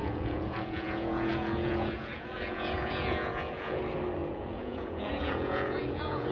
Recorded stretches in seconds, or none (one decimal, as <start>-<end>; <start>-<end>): 3.8-4.2